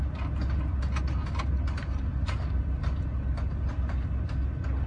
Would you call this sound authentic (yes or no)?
yes